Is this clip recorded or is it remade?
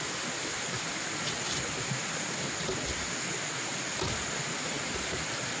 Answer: recorded